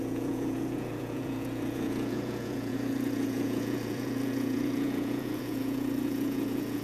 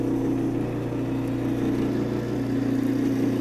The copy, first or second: first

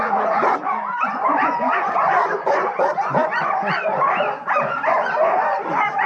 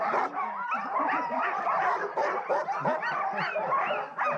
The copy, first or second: first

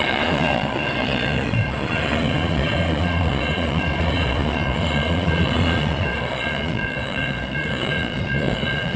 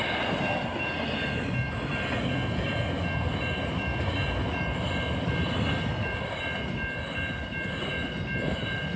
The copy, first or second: first